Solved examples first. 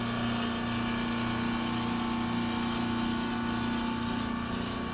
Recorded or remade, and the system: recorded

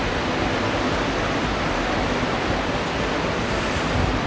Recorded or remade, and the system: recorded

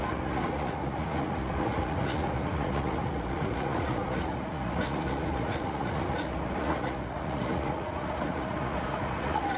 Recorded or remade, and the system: remade, vocoder, Vocos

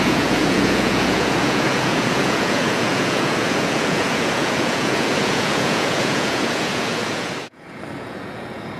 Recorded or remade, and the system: remade, vocoder, Vocos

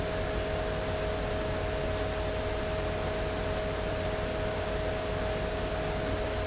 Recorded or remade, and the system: recorded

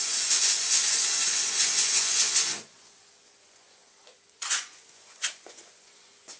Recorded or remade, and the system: remade, vocoder, Vocos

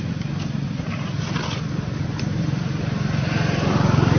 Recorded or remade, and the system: recorded